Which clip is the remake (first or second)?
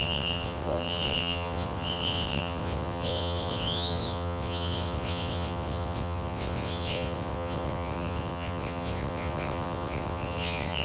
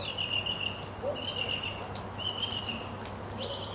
first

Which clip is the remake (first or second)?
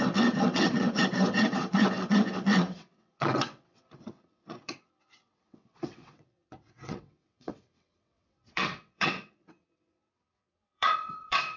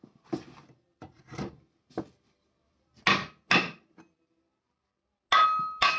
first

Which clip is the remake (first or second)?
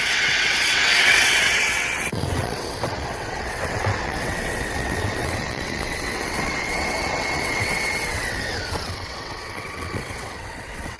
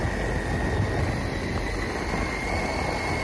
first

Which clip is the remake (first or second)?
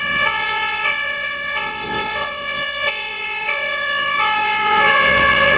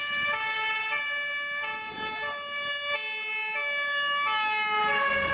first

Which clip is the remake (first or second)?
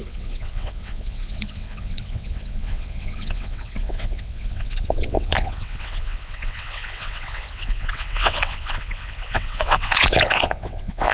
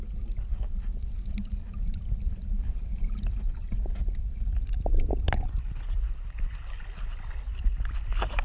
first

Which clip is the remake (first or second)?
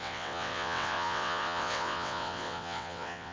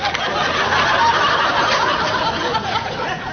first